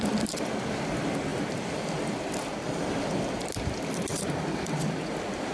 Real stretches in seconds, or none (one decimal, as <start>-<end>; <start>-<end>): 0.0-1.3; 2.1-2.5; 3.4-4.1; 5.1-5.5